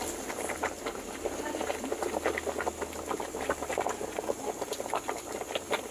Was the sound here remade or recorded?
recorded